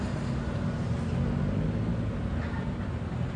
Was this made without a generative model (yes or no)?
yes